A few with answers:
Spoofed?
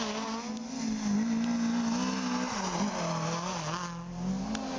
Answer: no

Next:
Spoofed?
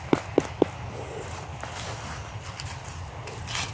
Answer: no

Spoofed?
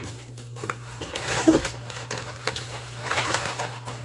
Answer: yes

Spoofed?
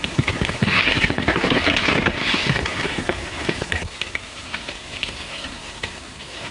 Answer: yes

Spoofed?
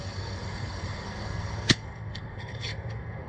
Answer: yes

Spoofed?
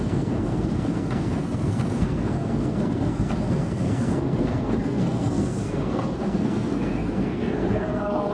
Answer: yes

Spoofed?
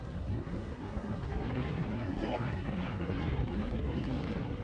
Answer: yes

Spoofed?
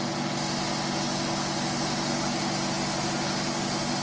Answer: no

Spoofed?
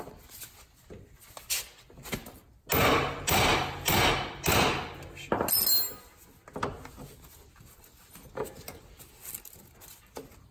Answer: no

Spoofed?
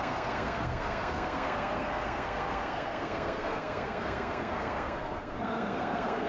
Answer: yes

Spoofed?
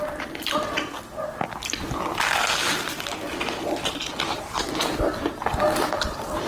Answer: no